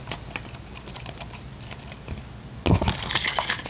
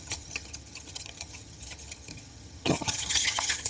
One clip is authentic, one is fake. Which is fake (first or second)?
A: second